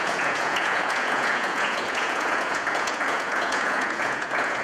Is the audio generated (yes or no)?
yes